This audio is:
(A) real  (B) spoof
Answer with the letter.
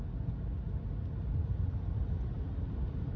A